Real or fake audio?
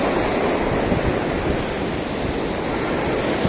real